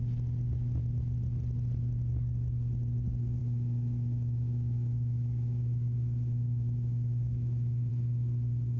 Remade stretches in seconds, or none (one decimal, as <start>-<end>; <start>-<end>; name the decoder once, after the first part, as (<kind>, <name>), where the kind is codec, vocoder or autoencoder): 3.4-7.9 (autoencoder, DAC-VAE)